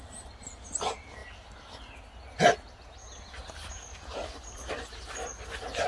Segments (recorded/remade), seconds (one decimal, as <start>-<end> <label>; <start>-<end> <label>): 0.0-5.9 recorded